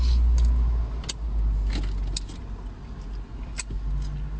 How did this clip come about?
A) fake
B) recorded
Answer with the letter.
B